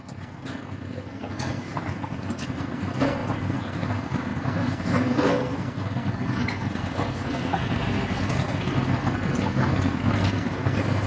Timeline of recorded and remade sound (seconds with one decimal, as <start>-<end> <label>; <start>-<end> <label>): 0.0-11.1 remade